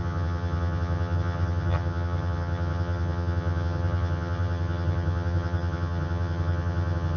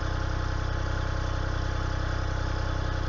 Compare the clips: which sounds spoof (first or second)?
first